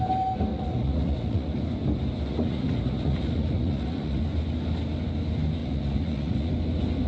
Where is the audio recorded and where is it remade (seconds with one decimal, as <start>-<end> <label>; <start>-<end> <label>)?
0.0-0.5 recorded; 0.5-1.6 remade; 1.6-2.3 recorded; 2.3-4.2 remade; 4.2-5.6 recorded; 5.6-6.5 remade; 6.5-7.1 recorded